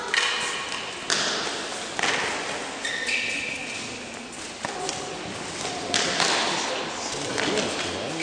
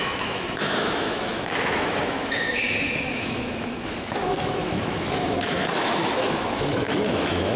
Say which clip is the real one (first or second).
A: first